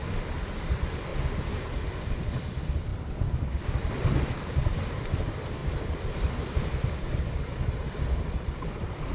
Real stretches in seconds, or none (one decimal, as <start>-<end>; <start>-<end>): 1.1-1.8; 2.9-4.0